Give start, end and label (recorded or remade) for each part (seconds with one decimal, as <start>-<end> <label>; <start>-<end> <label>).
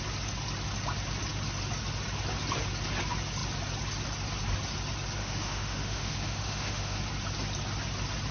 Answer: 0.0-5.2 recorded; 5.2-7.0 remade; 7.0-8.3 recorded